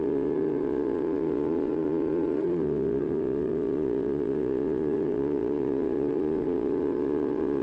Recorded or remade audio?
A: remade